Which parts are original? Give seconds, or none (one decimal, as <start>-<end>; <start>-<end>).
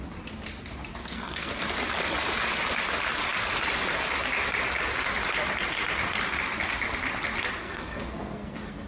0.0-1.0; 1.6-7.6